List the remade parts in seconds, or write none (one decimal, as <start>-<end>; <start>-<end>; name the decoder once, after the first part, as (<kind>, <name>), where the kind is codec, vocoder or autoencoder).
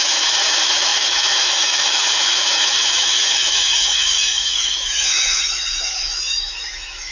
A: 0.0-7.1 (autoencoder, DAC-VAE)